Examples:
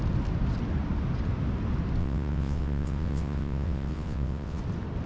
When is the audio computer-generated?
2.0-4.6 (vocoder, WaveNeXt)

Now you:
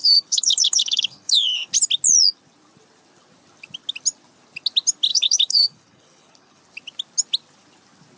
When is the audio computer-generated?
0.0-1.7 (codec, HILCodec); 5.1-6.6

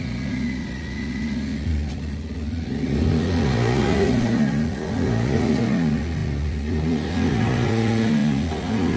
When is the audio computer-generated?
0.0-9.0 (vocoder, Vocos)

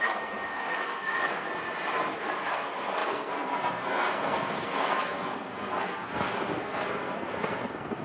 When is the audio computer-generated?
0.0-1.5 (codec, SNAC); 2.2-8.0